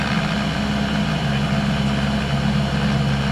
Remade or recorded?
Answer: recorded